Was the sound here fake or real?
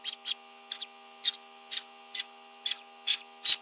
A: real